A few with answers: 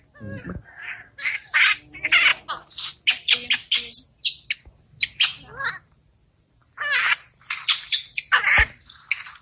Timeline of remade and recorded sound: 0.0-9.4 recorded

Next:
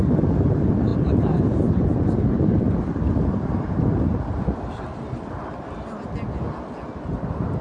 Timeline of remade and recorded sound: 0.0-0.9 recorded; 0.9-5.5 remade; 5.5-7.6 recorded

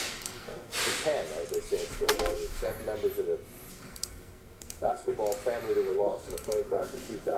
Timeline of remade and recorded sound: 0.0-0.7 remade; 0.7-1.9 recorded; 1.9-2.8 remade; 2.8-3.7 recorded; 3.7-5.1 remade; 5.1-5.9 recorded; 5.9-7.4 remade